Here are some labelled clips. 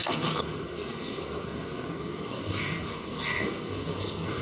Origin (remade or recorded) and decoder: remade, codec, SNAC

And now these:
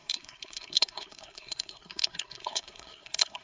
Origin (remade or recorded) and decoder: remade, codec, SNAC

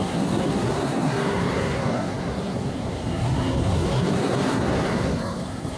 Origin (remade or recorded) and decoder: remade, codec, SNAC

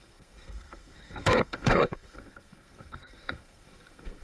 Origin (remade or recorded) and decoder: remade, codec, SNAC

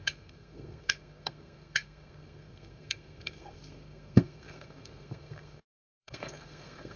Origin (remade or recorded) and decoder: remade, codec, SNAC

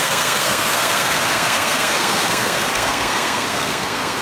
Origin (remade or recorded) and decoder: remade, codec, SNAC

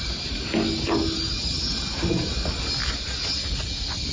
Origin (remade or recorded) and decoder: recorded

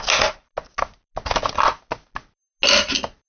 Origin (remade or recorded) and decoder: recorded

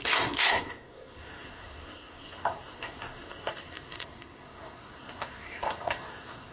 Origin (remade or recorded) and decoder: remade, codec, SNAC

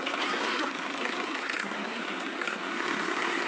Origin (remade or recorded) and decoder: remade, codec, SNAC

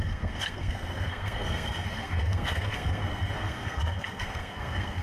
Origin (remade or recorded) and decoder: remade, codec, SNAC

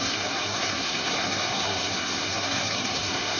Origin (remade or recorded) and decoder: remade, codec, SNAC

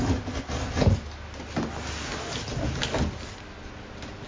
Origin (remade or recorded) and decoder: recorded